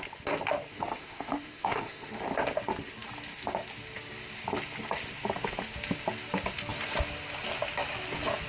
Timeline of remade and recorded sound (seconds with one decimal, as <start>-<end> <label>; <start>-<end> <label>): 0.0-0.7 recorded; 0.7-2.1 remade; 2.1-8.5 recorded